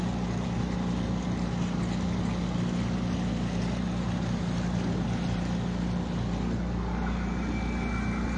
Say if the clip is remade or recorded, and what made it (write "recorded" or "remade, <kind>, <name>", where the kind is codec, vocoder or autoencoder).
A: recorded